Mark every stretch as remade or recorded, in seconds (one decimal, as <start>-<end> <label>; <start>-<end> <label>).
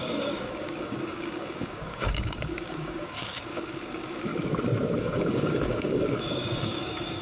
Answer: 0.0-4.3 remade; 4.3-5.0 recorded; 5.0-7.2 remade